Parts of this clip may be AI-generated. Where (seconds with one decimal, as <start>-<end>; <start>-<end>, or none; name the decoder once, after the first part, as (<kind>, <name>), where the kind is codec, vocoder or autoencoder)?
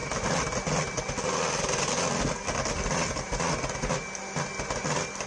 none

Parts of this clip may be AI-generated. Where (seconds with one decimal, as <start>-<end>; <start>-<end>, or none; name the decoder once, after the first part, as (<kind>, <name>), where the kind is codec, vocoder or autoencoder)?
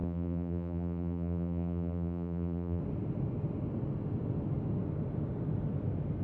0.0-2.8 (vocoder, BigVGAN v2)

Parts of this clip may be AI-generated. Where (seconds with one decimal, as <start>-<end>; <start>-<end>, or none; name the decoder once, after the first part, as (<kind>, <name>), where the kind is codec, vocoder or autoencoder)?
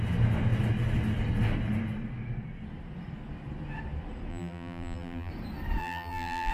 4.3-5.3 (vocoder, BigVGAN v2); 5.8-6.5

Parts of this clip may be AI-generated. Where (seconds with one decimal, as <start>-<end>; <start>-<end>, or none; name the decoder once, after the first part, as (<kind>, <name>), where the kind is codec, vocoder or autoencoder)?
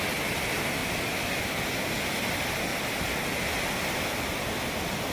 2.7-3.7 (vocoder, BigVGAN v2)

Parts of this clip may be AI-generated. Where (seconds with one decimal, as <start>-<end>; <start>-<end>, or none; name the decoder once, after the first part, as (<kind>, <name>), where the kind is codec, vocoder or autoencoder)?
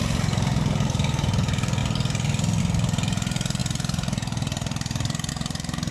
0.0-1.8 (vocoder, BigVGAN v2); 2.6-5.9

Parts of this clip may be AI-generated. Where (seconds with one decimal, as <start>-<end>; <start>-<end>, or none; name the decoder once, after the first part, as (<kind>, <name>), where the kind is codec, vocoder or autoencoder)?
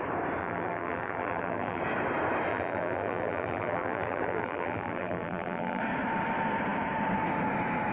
0.4-1.8 (vocoder, BigVGAN v2); 2.5-5.8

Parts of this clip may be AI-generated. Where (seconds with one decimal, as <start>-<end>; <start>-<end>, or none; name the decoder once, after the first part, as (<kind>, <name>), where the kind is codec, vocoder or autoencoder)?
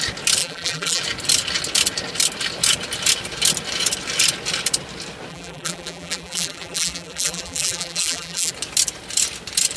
0.4-1.0 (vocoder, BigVGAN v2); 5.3-8.5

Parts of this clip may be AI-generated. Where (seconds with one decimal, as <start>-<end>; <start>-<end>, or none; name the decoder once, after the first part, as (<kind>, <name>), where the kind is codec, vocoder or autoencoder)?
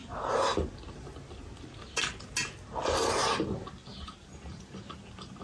3.9-4.7 (vocoder, BigVGAN v2)